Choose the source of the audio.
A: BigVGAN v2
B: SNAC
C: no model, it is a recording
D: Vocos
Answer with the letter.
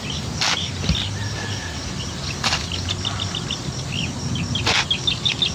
C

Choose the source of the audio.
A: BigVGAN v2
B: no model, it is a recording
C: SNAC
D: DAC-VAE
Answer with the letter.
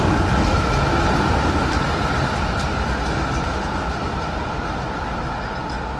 B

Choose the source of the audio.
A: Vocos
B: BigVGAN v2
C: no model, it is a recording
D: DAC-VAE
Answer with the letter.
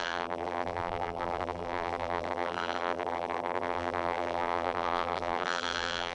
B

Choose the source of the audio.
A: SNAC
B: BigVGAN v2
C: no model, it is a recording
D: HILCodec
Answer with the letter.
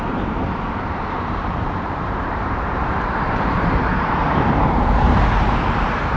B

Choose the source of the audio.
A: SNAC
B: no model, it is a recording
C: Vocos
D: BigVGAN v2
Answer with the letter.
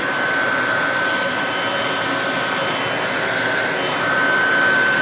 B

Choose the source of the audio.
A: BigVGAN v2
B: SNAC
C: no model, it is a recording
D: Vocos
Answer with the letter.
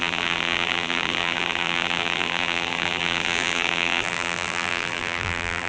A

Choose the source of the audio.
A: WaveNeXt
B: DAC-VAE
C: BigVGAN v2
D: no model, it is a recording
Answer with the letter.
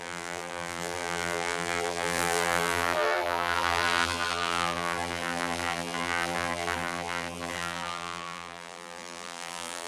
C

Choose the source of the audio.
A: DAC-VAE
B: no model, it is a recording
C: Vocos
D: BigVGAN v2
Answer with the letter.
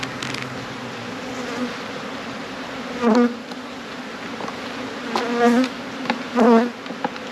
B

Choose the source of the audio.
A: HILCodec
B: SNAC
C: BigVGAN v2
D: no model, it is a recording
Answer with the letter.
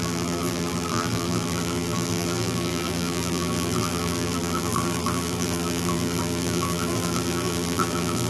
C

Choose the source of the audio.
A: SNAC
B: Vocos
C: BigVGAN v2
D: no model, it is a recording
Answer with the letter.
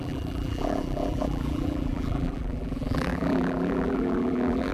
C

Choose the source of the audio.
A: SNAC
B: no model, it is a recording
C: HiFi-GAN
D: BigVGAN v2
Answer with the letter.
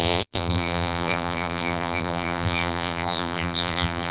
D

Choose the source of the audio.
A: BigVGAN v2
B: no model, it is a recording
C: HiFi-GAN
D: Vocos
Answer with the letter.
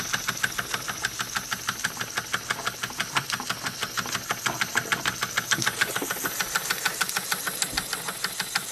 B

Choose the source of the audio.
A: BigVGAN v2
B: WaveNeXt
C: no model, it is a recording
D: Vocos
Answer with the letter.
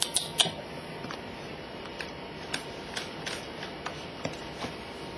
A